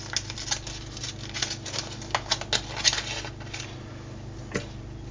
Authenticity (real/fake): real